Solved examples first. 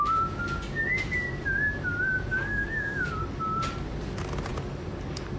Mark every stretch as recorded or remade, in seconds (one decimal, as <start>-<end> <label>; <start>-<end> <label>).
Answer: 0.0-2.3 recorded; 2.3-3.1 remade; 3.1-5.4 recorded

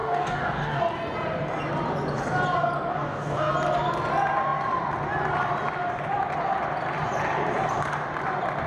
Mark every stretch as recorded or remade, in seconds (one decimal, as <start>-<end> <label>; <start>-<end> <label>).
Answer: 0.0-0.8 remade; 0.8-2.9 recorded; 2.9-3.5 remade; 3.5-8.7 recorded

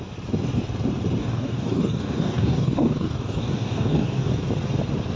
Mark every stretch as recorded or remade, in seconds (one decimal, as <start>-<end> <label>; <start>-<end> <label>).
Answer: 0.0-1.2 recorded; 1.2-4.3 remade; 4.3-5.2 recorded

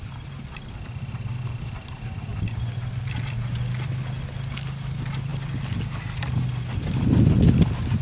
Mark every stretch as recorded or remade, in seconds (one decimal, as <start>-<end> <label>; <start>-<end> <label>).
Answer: 0.0-8.0 recorded

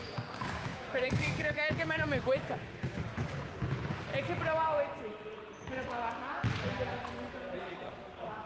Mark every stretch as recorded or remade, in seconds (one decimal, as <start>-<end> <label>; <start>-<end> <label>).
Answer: 0.0-4.1 remade; 4.1-7.6 recorded; 7.6-8.5 remade

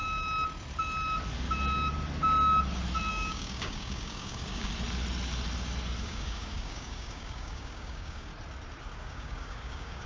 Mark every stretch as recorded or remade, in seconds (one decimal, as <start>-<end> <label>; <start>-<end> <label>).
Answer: 0.0-3.1 recorded; 3.1-4.7 remade; 4.7-6.0 recorded; 6.0-8.3 remade; 8.3-9.0 recorded; 9.0-10.1 remade